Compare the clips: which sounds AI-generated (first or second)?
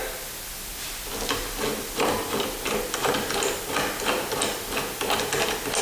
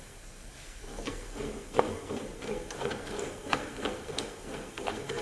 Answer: second